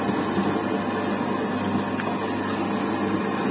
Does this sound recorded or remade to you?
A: recorded